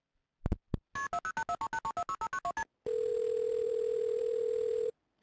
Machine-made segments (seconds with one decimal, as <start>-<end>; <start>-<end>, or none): 3.1-5.2